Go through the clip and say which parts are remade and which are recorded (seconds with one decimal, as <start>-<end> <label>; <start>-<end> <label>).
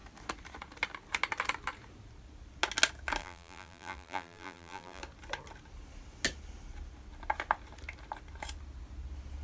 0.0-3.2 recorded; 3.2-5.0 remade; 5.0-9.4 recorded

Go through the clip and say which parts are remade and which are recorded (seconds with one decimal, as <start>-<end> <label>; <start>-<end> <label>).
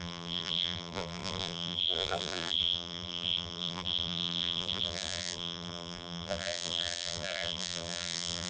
0.0-8.5 remade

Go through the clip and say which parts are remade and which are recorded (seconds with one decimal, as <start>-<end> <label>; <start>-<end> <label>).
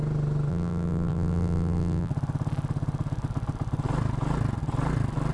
0.0-0.5 recorded; 0.5-2.1 remade; 2.1-5.3 recorded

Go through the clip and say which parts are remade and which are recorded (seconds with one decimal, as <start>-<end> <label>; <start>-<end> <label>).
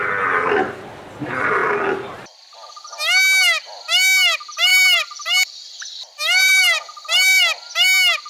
0.0-4.7 recorded; 4.7-7.4 remade; 7.4-8.3 recorded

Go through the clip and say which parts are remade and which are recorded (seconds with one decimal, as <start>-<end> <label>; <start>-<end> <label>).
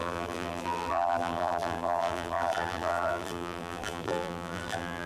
0.0-5.1 remade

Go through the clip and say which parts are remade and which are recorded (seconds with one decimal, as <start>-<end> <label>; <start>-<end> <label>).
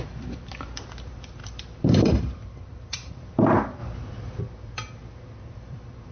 0.0-3.8 remade; 3.8-4.4 recorded; 4.4-6.1 remade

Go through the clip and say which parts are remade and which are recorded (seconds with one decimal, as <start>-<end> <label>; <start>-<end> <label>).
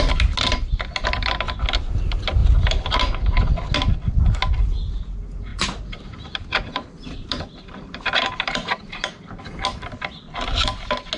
0.0-5.5 recorded; 5.5-9.4 remade; 9.4-11.2 recorded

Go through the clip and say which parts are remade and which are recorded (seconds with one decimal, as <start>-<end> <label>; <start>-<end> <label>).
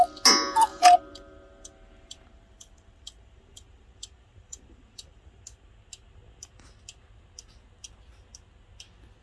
0.0-0.7 recorded; 0.7-5.4 remade; 5.4-9.2 recorded